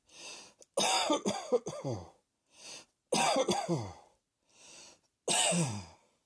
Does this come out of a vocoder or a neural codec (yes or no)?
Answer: no